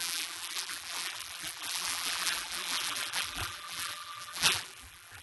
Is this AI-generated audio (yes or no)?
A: yes